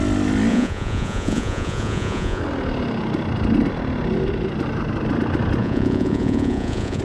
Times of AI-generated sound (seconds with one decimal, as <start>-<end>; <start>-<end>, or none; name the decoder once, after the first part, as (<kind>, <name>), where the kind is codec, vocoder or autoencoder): 0.5-2.4 (vocoder, Vocos); 5.6-7.0